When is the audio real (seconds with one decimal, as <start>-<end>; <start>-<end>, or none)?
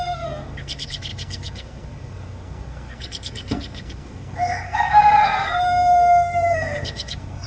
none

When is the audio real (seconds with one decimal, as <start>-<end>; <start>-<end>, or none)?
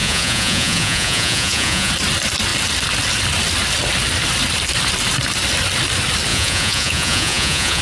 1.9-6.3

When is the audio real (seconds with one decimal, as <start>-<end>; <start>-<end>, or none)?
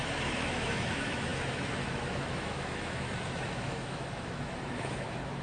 none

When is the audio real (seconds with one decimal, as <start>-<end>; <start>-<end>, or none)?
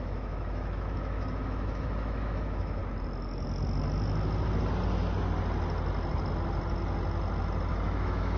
2.8-7.7